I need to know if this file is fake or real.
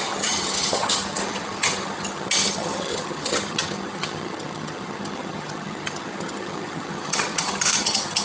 fake